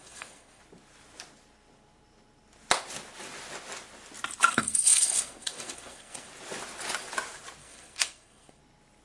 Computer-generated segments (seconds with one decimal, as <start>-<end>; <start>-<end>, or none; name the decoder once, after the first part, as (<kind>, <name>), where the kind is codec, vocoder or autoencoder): 0.0-0.6 (codec, SNAC); 4.4-6.3; 7.6-8.6